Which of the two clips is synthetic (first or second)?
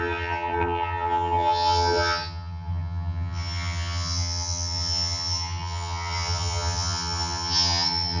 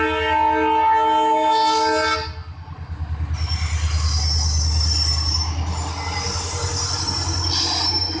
first